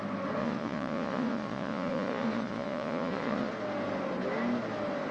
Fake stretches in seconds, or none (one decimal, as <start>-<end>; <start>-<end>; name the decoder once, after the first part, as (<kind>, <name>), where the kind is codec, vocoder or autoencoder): 0.4-3.5 (vocoder, Vocos)